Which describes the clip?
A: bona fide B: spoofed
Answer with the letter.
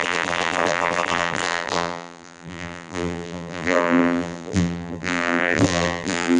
B